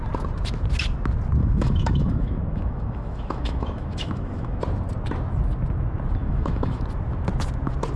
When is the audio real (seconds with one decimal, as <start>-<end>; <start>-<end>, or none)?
0.0-1.4; 4.6-6.2; 6.8-8.0